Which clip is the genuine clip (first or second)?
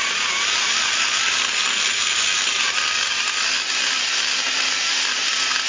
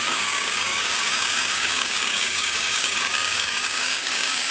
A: first